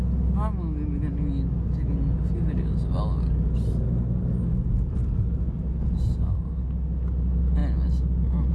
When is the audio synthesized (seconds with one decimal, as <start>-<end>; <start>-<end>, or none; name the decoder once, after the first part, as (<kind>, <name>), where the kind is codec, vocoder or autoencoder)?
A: none